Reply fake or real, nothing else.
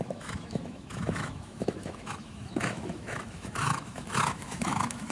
fake